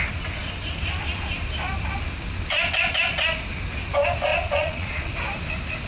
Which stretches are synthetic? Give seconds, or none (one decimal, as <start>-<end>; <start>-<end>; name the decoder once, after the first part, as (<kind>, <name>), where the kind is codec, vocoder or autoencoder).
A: 4.3-5.1 (vocoder, Vocos)

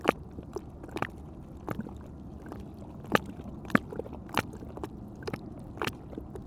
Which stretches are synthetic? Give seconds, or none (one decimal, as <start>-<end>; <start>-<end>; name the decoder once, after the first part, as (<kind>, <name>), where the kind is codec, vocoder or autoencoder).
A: none

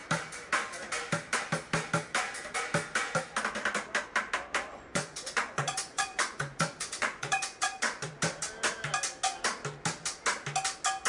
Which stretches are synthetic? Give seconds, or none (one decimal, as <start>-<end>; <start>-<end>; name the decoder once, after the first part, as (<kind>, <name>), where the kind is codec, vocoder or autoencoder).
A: 4.7-8.1 (vocoder, Vocos)

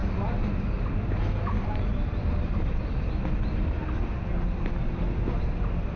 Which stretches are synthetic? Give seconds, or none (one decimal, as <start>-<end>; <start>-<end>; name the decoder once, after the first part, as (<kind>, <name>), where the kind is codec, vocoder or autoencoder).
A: none